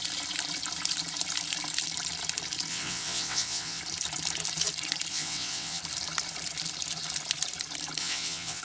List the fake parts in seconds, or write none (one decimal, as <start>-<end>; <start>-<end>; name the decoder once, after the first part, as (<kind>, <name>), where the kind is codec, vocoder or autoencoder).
2.7-3.8 (vocoder, WaveNeXt); 5.1-5.8; 8.0-8.6